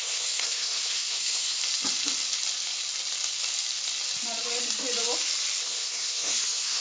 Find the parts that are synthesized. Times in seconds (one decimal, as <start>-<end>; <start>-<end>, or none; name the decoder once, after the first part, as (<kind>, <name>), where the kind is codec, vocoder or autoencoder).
0.0-1.6 (codec, SNAC); 5.6-6.8